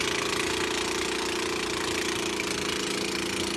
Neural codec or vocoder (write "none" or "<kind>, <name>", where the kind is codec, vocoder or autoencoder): none